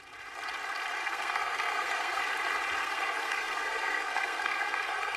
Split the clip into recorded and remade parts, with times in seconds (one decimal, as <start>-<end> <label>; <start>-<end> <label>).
0.0-1.0 recorded; 1.0-2.2 remade; 2.2-2.8 recorded; 2.8-5.2 remade